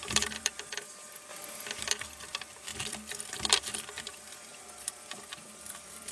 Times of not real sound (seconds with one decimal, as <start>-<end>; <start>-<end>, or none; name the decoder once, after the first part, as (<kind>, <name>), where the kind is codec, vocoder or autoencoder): 0.0-1.3 (vocoder, BigVGAN v2); 1.9-6.1